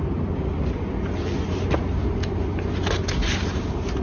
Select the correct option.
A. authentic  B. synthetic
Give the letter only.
A